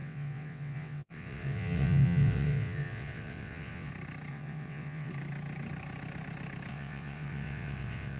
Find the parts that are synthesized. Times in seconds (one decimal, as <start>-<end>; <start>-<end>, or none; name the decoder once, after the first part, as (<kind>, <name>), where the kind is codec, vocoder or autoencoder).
0.0-3.9 (vocoder, WaveNeXt); 4.3-5.1; 6.7-8.2